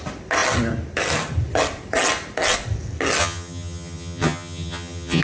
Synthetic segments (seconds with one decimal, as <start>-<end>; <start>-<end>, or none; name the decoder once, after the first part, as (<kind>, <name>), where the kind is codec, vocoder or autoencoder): 3.2-5.2 (vocoder, HiFi-GAN)